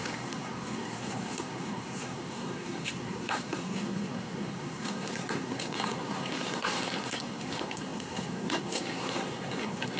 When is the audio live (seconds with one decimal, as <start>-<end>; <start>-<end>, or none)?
none